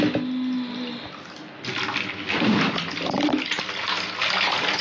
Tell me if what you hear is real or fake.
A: real